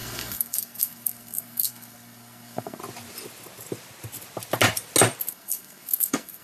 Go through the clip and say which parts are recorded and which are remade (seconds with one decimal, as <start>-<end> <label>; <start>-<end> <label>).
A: 0.0-2.8 remade; 2.8-5.3 recorded; 5.3-6.4 remade